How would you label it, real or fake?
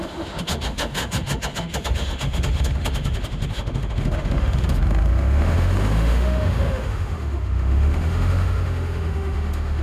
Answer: fake